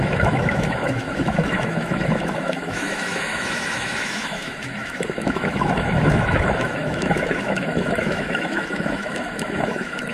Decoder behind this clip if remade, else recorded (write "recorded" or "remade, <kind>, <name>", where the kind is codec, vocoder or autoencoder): remade, autoencoder, DAC-VAE